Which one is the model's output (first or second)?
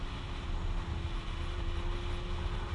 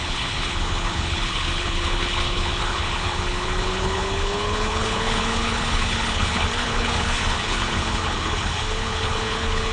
second